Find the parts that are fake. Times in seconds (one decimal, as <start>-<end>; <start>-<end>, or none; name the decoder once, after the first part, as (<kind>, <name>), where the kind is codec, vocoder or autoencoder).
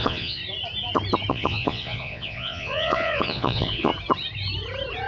0.0-0.4 (vocoder, Vocos); 1.3-3.9